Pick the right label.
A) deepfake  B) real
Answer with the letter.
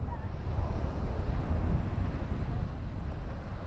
B